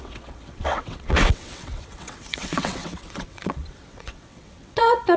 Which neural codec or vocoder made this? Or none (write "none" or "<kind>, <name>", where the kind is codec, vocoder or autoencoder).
vocoder, WaveNeXt